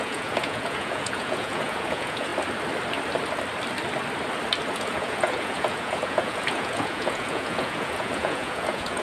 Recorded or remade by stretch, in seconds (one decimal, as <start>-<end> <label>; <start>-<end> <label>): 0.0-2.3 remade; 2.3-4.7 recorded; 4.7-9.0 remade